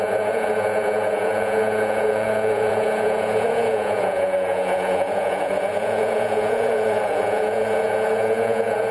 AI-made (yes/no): yes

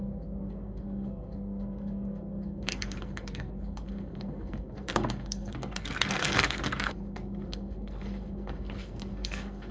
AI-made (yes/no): yes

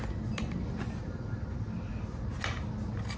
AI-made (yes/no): no